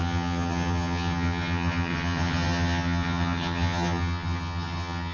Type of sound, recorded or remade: remade